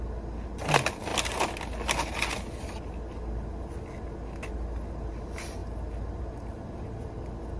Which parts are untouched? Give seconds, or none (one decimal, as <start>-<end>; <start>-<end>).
0.0-7.6